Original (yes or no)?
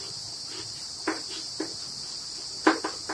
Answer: yes